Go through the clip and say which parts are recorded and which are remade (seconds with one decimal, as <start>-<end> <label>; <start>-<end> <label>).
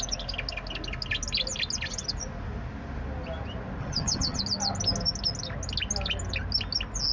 0.0-3.8 recorded; 3.8-4.4 remade; 4.4-7.1 recorded